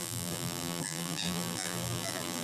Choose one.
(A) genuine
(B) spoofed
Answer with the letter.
B